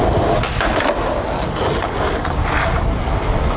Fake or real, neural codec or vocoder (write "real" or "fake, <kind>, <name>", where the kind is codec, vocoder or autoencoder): real